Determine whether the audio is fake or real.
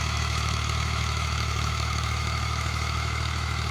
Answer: fake